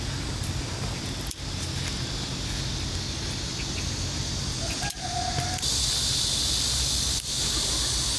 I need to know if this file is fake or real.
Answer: real